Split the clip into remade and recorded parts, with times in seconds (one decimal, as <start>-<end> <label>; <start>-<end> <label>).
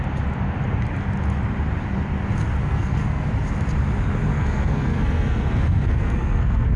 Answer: 0.0-2.6 recorded; 2.6-3.3 remade; 3.3-4.3 recorded; 4.3-6.8 remade